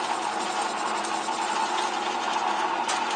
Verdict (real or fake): real